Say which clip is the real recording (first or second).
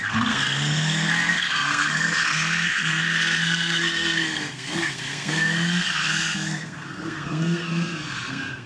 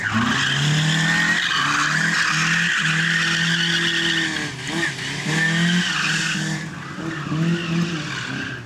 second